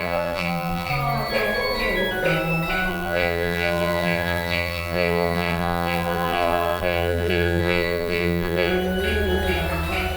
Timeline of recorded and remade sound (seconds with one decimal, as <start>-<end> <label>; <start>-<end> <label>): 0.0-0.9 remade; 0.9-2.9 recorded; 2.9-8.7 remade; 8.7-10.2 recorded